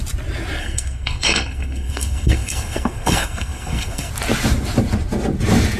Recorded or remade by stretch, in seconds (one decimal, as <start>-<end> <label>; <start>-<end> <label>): 0.0-0.6 recorded; 0.6-4.1 remade; 4.1-5.8 recorded